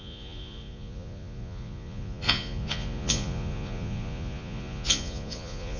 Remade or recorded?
remade